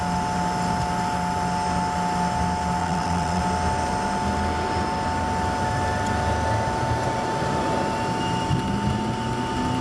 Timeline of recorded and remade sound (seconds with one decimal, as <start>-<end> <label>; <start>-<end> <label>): 0.0-2.8 recorded; 2.8-3.4 remade; 3.4-9.8 recorded